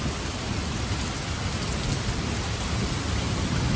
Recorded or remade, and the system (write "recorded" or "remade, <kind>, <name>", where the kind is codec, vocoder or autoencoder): recorded